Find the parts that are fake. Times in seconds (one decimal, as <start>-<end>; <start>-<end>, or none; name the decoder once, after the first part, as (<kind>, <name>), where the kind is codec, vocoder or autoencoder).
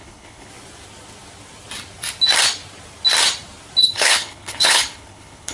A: 0.0-0.5 (codec, HILCodec); 3.8-5.5